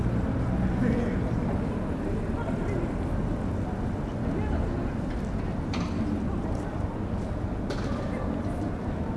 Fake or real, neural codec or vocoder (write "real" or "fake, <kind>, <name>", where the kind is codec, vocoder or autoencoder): real